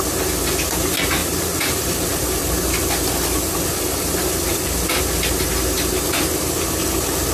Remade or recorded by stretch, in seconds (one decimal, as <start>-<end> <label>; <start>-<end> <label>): 0.0-1.2 recorded; 1.2-5.0 remade; 5.0-7.3 recorded